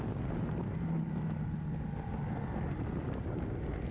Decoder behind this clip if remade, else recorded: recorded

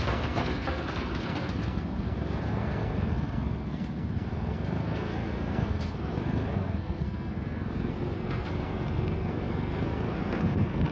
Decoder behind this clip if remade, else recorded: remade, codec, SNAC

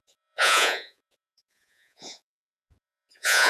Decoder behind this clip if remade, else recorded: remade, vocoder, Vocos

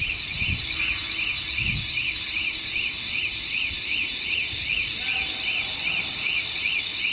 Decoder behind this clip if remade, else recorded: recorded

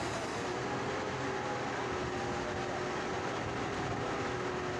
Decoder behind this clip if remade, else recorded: recorded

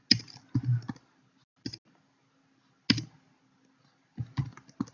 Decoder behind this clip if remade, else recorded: recorded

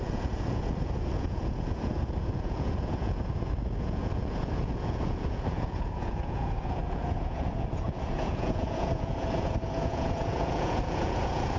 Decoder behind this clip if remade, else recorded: remade, vocoder, Vocos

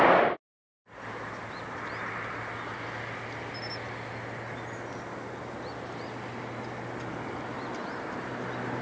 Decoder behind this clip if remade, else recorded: recorded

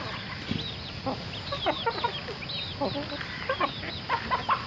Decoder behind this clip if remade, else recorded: recorded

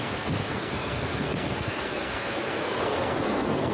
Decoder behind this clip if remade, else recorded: remade, codec, SNAC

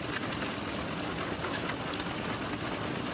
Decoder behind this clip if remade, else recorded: recorded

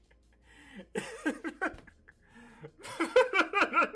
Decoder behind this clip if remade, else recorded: remade, vocoder, BigVGAN v2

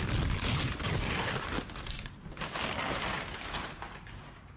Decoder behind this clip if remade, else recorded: recorded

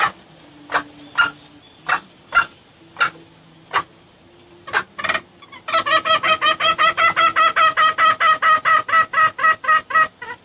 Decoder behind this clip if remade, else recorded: recorded